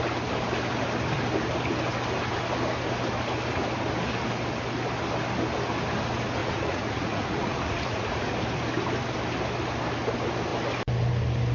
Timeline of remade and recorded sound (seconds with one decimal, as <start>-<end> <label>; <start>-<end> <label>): 0.0-6.4 recorded; 6.4-8.3 remade; 8.3-11.5 recorded

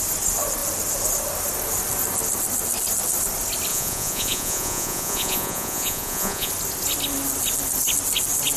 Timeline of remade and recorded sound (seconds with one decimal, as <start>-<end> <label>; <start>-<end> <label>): 0.0-3.7 recorded; 3.7-6.5 remade; 6.5-8.6 recorded

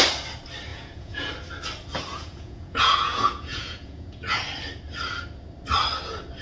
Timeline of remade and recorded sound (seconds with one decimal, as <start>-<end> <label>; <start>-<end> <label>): 0.0-0.7 recorded; 0.7-1.3 remade; 1.3-2.1 recorded; 2.1-4.4 remade; 4.4-6.4 recorded

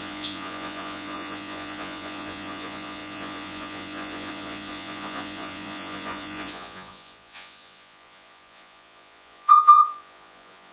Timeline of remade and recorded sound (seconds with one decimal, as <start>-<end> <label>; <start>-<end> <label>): 0.0-10.7 remade

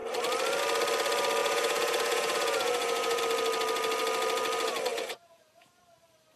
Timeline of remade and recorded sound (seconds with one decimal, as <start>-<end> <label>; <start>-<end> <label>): 0.0-1.4 recorded; 1.4-3.2 remade; 3.2-4.9 recorded; 4.9-5.8 remade; 5.8-6.4 recorded